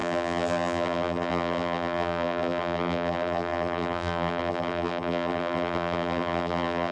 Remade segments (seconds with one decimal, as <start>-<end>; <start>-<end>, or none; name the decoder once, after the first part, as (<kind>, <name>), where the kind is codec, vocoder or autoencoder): 0.0-6.9 (vocoder, BigVGAN v2)